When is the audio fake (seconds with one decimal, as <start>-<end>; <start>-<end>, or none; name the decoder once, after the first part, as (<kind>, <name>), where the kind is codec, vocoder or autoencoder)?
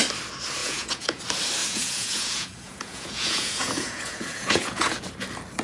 0.6-1.2 (vocoder, Vocos); 1.6-5.0